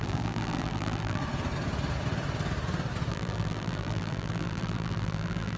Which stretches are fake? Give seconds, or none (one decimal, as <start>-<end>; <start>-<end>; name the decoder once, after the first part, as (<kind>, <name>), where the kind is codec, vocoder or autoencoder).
0.0-1.2 (vocoder, BigVGAN v2); 3.1-5.6